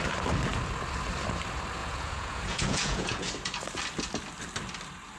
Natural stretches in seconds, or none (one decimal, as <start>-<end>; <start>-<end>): 0.0-1.8; 3.3-5.2